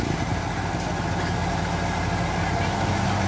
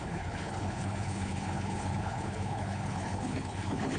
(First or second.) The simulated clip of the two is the second